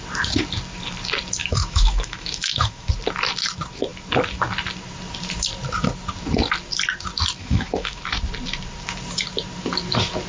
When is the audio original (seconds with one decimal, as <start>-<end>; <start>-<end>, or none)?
0.0-1.4; 2.9-7.4; 8.0-10.3

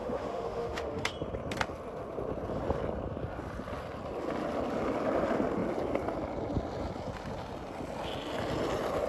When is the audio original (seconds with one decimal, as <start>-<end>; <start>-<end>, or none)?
1.1-9.1

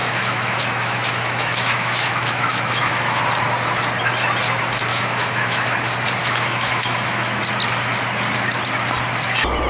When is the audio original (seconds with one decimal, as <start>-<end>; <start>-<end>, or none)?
3.2-4.9; 5.7-6.2; 7.4-9.7